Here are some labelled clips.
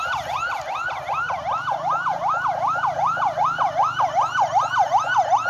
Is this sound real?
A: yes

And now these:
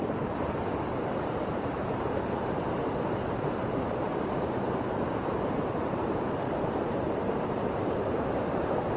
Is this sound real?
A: no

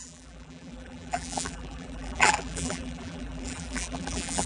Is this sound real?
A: no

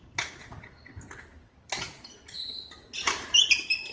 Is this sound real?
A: yes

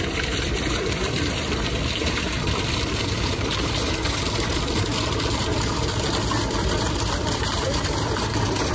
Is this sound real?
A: no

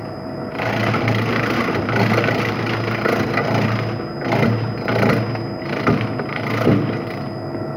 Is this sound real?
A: yes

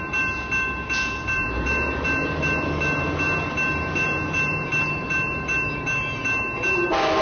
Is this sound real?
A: no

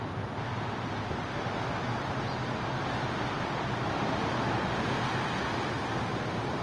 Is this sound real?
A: yes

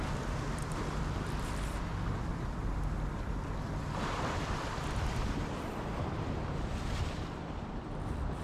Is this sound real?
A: no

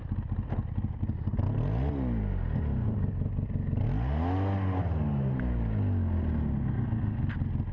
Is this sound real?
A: yes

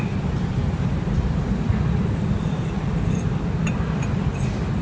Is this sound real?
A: no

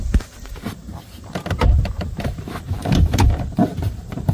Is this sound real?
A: no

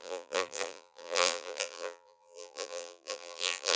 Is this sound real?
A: no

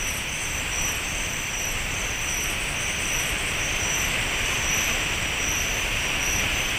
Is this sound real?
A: no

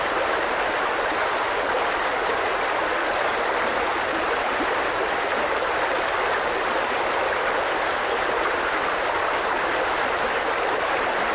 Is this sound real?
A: yes